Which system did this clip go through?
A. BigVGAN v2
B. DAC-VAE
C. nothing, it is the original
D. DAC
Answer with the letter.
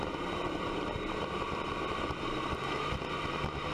A